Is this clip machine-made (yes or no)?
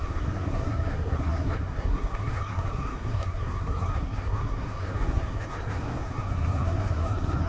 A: yes